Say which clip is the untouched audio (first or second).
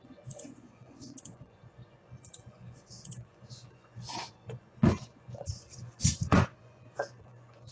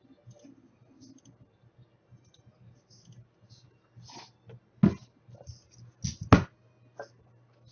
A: second